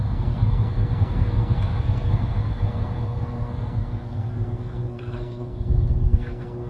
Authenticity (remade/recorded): remade